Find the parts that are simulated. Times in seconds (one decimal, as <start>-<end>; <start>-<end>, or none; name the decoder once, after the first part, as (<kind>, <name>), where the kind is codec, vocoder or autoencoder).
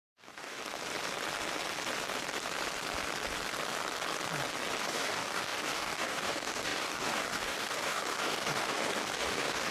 0.0-0.6 (codec, DAC); 4.8-9.7